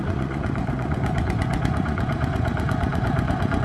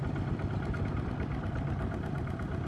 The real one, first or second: second